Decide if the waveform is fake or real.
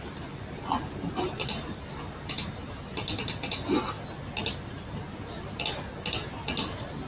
real